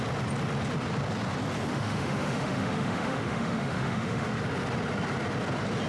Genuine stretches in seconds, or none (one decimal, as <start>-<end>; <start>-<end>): 0.0-1.7; 4.4-5.9